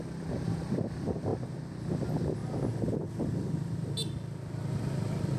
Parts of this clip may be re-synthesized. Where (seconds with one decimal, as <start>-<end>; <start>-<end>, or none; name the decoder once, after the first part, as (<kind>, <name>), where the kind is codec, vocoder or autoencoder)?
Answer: none